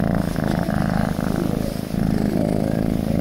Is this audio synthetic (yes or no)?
no